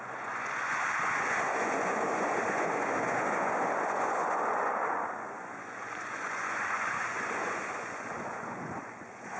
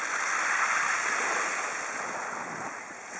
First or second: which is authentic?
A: second